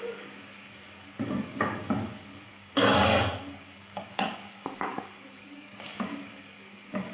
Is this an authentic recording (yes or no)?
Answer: no